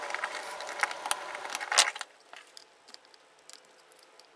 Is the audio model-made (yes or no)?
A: no